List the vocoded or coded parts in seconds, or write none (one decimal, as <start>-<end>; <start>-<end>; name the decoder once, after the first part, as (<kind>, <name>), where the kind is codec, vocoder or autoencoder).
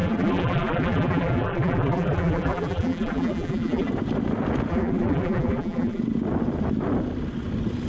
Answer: 0.0-3.9 (vocoder, BigVGAN v2); 4.7-6.0